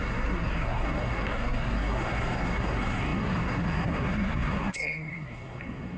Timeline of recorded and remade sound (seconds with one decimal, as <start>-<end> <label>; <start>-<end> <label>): 0.0-6.0 remade